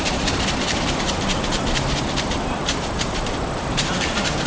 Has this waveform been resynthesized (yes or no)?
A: yes